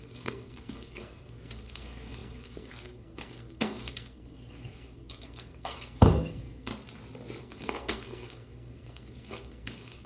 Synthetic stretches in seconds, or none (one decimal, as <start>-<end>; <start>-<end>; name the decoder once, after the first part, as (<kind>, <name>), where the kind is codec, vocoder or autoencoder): 0.0-6.7 (codec, SNAC); 7.4-10.1